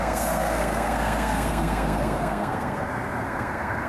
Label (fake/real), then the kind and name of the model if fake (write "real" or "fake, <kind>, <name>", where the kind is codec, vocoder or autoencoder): fake, codec, SNAC